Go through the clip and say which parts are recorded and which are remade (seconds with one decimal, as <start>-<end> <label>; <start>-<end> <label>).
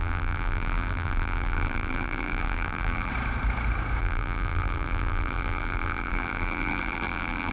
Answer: 0.0-3.1 remade; 3.1-4.0 recorded; 4.0-7.5 remade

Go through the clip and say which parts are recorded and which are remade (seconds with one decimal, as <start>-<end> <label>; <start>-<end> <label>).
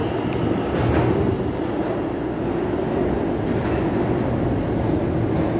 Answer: 0.0-5.6 recorded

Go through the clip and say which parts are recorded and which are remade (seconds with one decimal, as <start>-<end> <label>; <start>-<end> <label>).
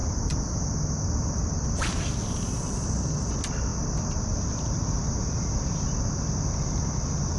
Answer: 0.0-7.4 recorded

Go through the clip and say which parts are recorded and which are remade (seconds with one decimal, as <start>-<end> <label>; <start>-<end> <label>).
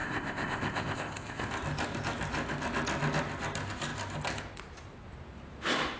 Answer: 0.0-1.5 remade; 1.5-6.0 recorded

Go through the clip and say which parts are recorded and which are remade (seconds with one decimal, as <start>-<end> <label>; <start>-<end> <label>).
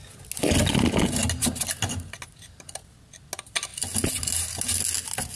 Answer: 0.0-5.4 recorded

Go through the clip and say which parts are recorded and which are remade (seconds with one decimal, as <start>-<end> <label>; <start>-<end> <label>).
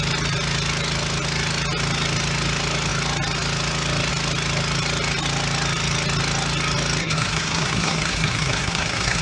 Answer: 0.0-7.0 recorded; 7.0-9.2 remade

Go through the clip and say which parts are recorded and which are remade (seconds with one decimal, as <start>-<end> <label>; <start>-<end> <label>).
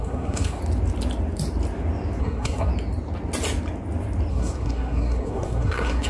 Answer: 0.0-0.6 remade; 0.6-2.2 recorded; 2.2-2.7 remade; 2.7-4.3 recorded; 4.3-6.1 remade